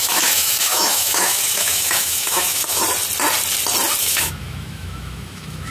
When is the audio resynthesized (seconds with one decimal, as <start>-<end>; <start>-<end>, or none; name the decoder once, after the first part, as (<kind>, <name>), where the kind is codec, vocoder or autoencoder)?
0.0-2.8 (autoencoder, DAC-VAE); 4.0-5.7